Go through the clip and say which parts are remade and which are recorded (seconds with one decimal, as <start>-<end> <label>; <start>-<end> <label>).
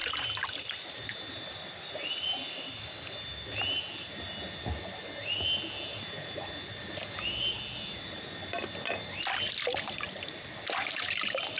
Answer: 0.0-0.9 remade; 0.9-11.6 recorded